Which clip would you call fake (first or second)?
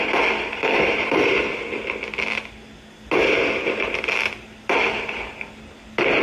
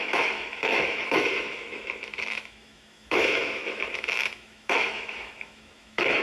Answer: second